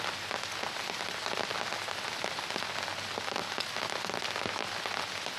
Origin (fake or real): real